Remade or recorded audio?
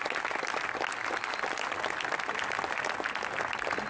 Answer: recorded